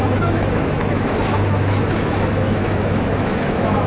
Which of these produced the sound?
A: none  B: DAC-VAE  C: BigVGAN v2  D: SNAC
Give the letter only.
B